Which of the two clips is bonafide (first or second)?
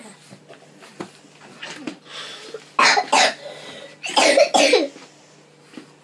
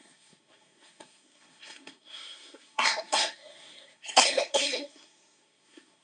first